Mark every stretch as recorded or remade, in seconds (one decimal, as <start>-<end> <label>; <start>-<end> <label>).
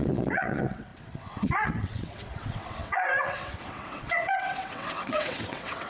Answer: 0.0-5.9 remade